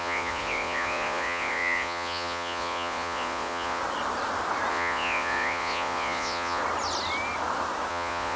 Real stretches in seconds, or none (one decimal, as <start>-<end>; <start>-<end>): 3.8-4.7; 6.6-7.9